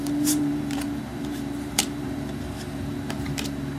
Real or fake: fake